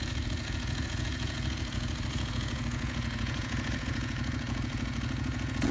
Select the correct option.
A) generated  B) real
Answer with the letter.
A